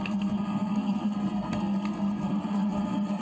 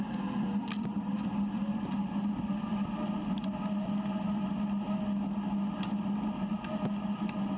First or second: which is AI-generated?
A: first